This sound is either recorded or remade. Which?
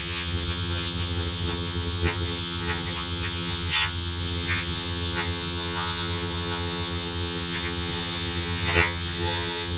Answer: remade